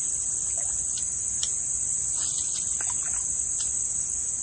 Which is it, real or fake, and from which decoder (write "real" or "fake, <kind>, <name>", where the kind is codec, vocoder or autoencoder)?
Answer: real